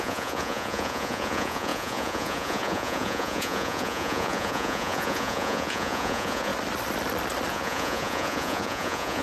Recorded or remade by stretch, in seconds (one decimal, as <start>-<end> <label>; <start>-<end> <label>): 0.0-6.5 remade; 6.5-7.5 recorded; 7.5-9.2 remade